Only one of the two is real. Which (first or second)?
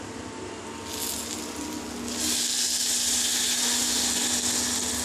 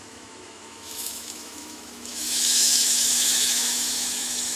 first